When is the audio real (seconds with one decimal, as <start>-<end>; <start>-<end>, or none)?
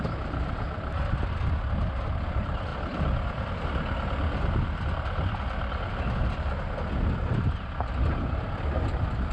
0.0-2.7; 3.6-9.3